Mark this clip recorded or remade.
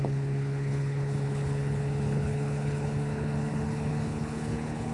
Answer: remade